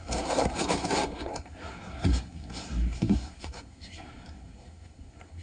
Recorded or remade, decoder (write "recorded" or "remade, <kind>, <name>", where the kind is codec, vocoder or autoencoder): remade, codec, SNAC